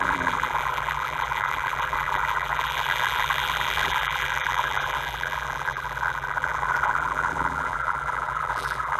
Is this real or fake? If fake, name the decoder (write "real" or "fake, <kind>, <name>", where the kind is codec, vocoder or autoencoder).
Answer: fake, vocoder, BigVGAN v2